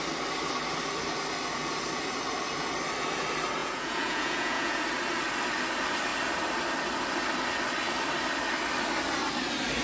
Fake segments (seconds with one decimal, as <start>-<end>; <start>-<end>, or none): 3.6-4.8